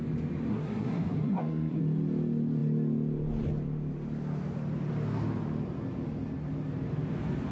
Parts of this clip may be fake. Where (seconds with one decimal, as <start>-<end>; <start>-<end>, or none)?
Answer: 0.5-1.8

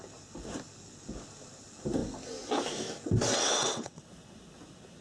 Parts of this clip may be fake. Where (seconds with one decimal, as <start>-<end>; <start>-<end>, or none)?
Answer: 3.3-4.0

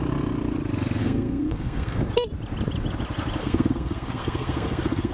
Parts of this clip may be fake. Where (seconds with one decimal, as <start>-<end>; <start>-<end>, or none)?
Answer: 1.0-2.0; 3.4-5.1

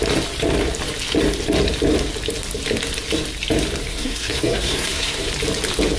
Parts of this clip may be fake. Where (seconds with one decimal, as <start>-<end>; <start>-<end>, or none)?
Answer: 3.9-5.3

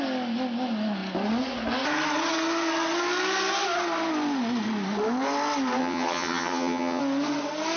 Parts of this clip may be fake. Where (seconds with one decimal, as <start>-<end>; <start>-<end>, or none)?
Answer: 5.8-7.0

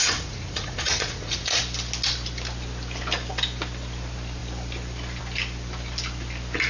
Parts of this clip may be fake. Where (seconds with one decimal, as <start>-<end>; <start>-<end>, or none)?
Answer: 0.0-1.6

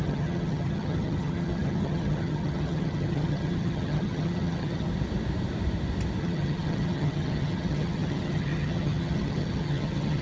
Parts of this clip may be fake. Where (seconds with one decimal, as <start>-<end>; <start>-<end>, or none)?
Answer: 0.0-4.9; 6.2-10.2